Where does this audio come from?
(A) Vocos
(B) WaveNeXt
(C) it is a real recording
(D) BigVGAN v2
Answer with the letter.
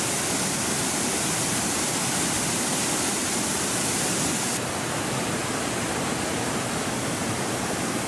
C